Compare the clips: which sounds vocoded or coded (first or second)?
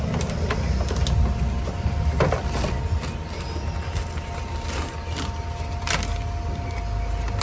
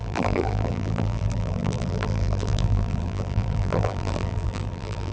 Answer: second